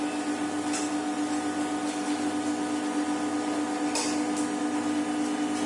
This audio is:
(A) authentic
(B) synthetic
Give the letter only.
A